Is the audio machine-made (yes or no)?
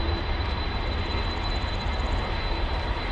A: no